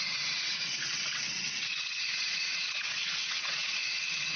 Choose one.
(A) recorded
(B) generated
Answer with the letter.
B